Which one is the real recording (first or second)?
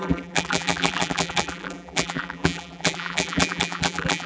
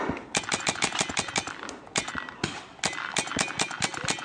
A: second